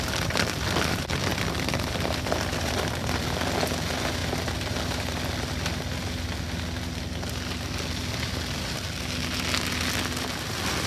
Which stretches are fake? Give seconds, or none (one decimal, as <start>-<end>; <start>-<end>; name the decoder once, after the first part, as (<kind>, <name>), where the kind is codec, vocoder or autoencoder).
1.3-3.4 (vocoder, BigVGAN v2)

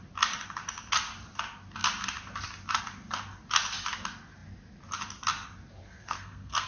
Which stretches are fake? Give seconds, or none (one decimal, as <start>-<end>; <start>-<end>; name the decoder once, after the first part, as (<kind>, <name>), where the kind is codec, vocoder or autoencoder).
5.8-6.7 (codec, SNAC)

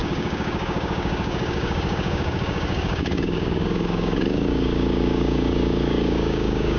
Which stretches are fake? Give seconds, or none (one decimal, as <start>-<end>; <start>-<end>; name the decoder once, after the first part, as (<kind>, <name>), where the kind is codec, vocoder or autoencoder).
0.0-6.8 (codec, DAC)

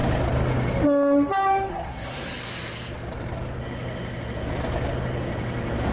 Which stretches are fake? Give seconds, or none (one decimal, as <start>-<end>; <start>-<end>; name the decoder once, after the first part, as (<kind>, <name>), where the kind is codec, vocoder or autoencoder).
1.7-2.3 (codec, SNAC)

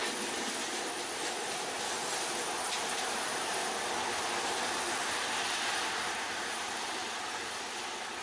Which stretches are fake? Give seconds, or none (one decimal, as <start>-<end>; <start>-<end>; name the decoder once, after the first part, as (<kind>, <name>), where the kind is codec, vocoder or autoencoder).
3.0-3.6 (vocoder, BigVGAN v2); 5.1-7.0

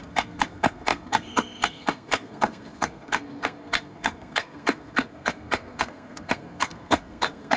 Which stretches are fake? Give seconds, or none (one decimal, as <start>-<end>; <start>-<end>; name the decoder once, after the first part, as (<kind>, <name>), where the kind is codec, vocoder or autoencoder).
0.0-7.6 (codec, SNAC)

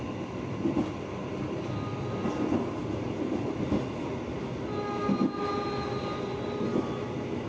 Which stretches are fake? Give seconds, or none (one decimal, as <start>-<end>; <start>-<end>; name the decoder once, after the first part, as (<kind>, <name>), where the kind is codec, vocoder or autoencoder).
2.8-3.6 (vocoder, BigVGAN v2)

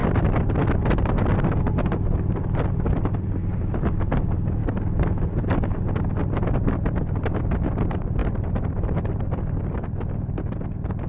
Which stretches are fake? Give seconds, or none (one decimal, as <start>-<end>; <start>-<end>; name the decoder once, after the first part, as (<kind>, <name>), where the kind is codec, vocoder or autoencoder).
2.7-11.1 (vocoder, BigVGAN v2)